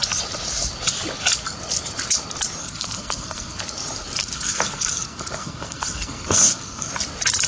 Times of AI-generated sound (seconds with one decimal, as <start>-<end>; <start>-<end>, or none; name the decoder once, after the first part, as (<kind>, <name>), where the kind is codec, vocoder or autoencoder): 2.6-3.6 (codec, SNAC); 4.2-6.9